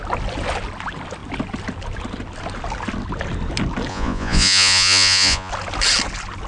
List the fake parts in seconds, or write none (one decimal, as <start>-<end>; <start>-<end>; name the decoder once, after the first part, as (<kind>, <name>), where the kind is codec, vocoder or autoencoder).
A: 3.9-5.5 (vocoder, Vocos)